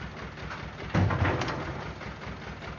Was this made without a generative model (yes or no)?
yes